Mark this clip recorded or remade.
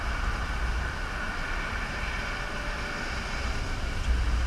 recorded